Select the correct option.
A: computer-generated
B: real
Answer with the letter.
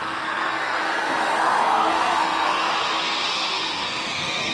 A